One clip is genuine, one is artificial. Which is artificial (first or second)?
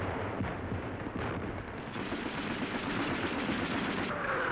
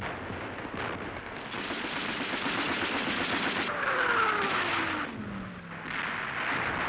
first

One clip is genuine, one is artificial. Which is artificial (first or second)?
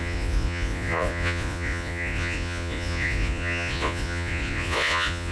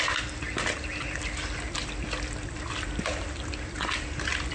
first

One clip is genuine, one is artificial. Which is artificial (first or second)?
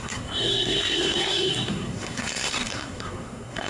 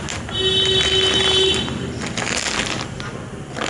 first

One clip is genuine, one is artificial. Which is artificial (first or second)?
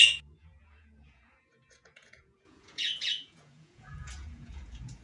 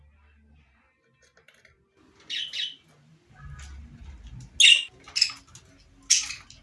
first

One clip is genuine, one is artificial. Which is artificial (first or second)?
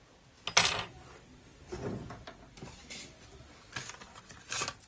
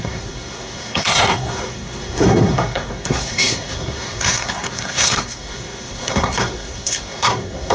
second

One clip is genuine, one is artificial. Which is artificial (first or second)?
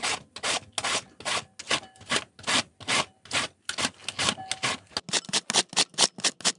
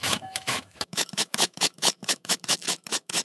second